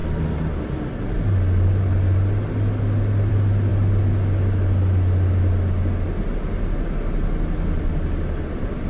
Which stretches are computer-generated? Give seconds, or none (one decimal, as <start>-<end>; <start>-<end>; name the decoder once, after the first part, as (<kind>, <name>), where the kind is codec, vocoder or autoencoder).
none